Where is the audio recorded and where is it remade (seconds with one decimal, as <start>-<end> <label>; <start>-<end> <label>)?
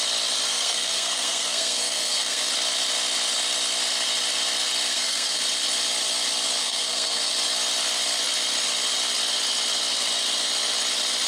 0.0-0.5 recorded; 0.5-2.5 remade; 2.5-4.9 recorded; 4.9-5.4 remade; 5.4-6.6 recorded; 6.6-7.3 remade; 7.3-11.3 recorded